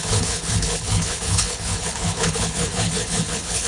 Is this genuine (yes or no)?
no